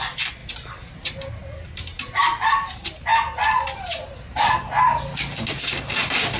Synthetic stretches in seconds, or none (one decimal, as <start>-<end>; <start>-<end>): none